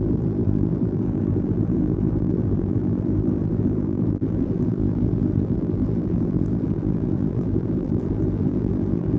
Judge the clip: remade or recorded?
remade